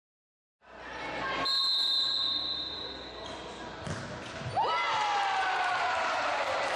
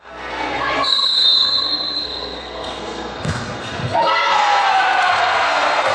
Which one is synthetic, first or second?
second